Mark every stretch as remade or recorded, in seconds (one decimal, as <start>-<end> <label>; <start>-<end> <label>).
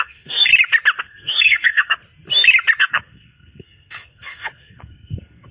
0.0-0.5 remade; 0.5-1.0 recorded; 1.0-2.0 remade; 2.0-2.8 recorded; 2.8-5.5 remade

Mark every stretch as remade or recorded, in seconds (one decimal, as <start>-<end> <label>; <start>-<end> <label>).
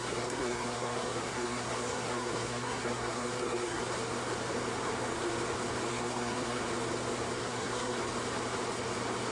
0.0-3.8 remade; 3.8-5.9 recorded; 5.9-6.6 remade; 6.6-7.4 recorded; 7.4-8.0 remade; 8.0-9.3 recorded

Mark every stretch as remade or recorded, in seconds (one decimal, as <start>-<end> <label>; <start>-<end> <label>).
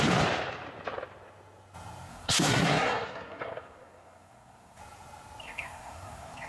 0.0-2.1 recorded; 2.1-4.8 remade; 4.8-5.4 recorded; 5.4-6.5 remade